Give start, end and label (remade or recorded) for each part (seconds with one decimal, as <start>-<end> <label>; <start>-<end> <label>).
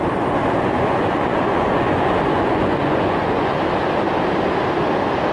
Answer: 0.0-0.4 recorded; 0.4-3.6 remade; 3.6-5.3 recorded